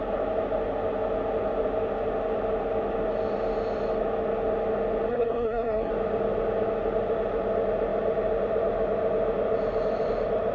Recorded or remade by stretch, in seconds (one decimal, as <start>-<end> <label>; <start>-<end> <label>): 0.0-5.1 recorded; 5.1-5.9 remade; 5.9-10.5 recorded